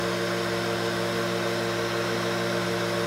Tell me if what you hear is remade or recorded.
recorded